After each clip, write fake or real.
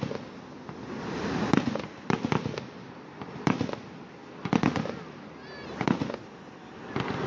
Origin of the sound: real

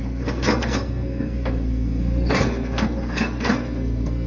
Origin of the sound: fake